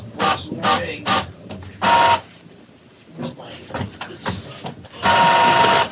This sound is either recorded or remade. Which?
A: recorded